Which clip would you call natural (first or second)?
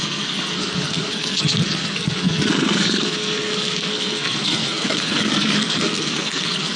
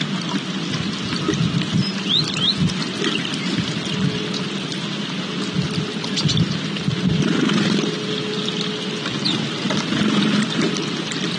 second